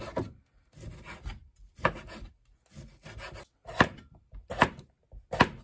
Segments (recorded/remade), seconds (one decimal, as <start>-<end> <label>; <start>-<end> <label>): 0.0-3.6 recorded; 3.6-5.0 remade; 5.0-5.6 recorded